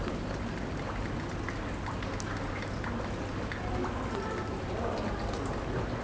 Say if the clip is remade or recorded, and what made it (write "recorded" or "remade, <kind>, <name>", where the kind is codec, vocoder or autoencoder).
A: recorded